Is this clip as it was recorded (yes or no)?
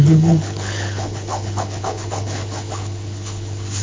no